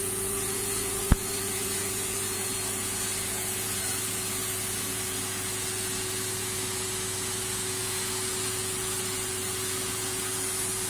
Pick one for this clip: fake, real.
fake